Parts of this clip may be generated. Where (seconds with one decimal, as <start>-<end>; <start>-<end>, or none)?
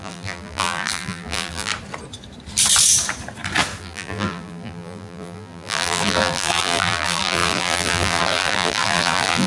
0.0-1.7; 3.8-9.5